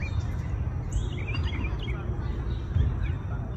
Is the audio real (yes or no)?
yes